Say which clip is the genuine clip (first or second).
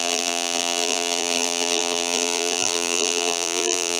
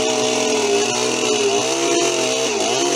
second